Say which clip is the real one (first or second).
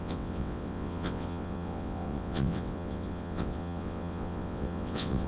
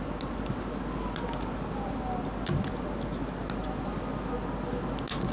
second